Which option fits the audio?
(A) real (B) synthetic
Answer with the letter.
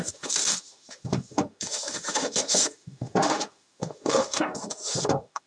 B